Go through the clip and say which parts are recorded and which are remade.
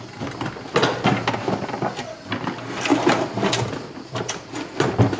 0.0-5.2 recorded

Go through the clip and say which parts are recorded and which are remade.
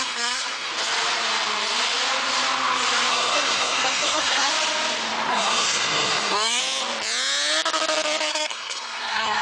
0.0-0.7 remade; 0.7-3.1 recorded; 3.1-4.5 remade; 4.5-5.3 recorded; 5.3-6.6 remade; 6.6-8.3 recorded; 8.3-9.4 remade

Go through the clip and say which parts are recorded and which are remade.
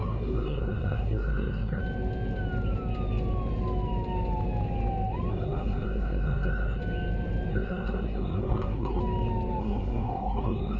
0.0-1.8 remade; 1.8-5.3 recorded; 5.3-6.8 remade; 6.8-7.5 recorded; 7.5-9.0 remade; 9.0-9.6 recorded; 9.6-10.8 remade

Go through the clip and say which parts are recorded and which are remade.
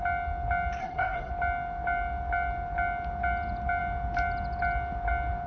0.0-0.8 recorded; 0.8-1.3 remade; 1.3-5.5 recorded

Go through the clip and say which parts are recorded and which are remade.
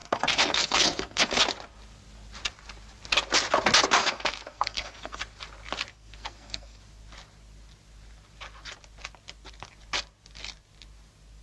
0.0-1.4 remade; 1.4-4.0 recorded; 4.0-5.2 remade; 5.2-5.9 recorded; 5.9-6.8 remade; 6.8-11.4 recorded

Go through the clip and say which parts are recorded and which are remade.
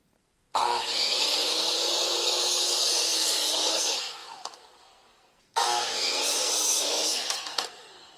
0.0-8.2 remade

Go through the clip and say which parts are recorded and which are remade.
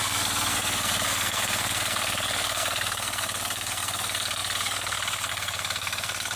0.0-6.4 remade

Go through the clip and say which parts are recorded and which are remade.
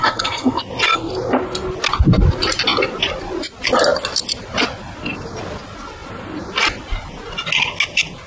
0.0-0.6 remade; 0.6-8.3 recorded